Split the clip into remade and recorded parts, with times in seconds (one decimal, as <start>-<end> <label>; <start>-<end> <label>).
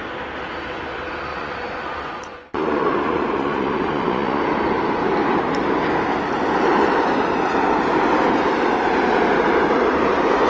0.0-1.3 recorded; 1.3-4.4 remade; 4.4-10.5 recorded